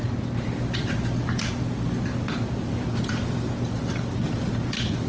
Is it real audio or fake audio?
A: real